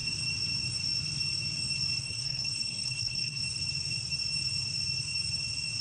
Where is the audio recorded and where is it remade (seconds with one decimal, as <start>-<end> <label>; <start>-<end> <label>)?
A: 0.0-2.0 recorded; 2.0-3.4 remade; 3.4-5.8 recorded